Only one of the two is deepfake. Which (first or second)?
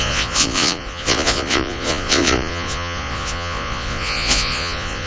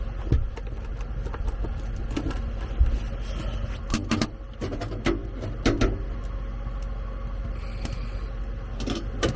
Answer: first